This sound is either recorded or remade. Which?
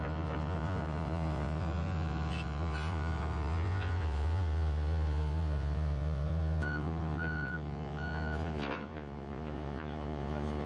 remade